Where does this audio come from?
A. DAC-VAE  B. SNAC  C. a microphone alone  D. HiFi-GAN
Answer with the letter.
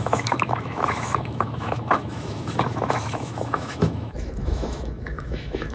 A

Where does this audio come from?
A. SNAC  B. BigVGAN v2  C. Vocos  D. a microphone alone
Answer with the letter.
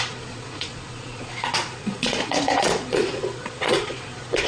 C